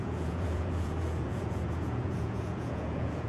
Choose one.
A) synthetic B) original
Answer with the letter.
A